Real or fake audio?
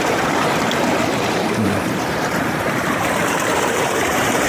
fake